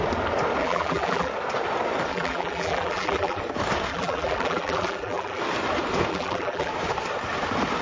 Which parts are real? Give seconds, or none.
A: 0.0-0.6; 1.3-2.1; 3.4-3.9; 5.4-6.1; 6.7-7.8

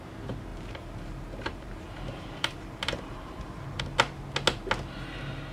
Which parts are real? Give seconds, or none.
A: 0.0-0.5; 3.8-5.5

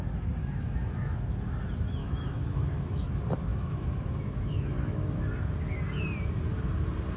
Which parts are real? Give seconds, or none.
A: 0.0-0.4; 1.2-2.0; 3.1-3.5; 5.2-7.2

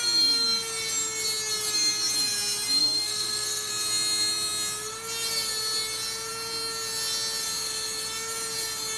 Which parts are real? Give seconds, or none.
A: 0.0-2.8; 3.7-9.0

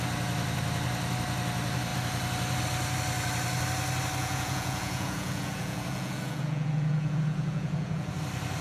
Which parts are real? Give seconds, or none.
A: 0.0-4.2; 8.1-8.6

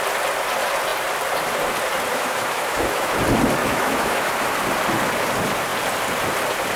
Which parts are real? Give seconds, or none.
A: 0.0-2.1; 3.2-3.6; 4.3-6.8

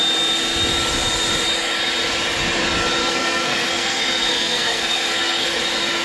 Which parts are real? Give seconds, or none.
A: 0.0-3.0; 5.6-6.0